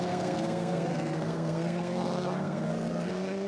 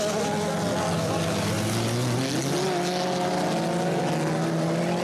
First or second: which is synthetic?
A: first